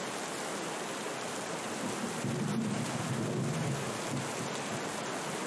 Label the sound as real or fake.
real